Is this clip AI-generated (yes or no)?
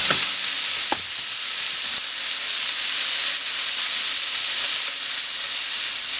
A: no